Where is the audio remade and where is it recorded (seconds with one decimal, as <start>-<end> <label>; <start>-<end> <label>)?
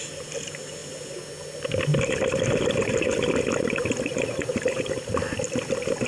0.0-4.1 recorded; 4.1-5.1 remade; 5.1-6.1 recorded